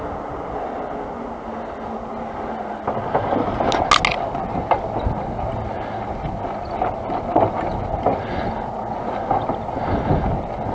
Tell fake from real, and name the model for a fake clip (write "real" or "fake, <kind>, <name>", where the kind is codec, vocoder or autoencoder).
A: real